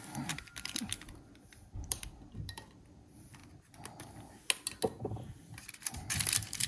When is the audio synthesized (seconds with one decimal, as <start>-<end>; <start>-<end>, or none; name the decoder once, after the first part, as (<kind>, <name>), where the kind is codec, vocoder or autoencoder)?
0.0-3.4 (vocoder, BigVGAN v2); 5.0-6.7